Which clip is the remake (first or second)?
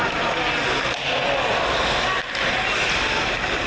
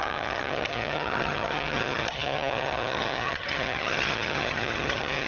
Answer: second